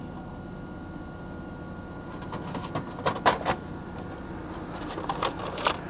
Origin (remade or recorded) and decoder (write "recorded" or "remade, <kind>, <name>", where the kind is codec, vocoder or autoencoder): recorded